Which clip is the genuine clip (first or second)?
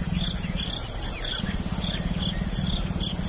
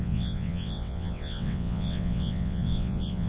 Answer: first